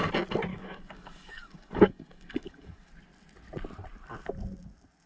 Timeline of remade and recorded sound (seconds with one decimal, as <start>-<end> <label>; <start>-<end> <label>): 0.0-0.5 recorded; 0.5-2.9 remade; 2.9-5.1 recorded